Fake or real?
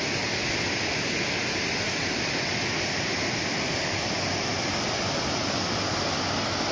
real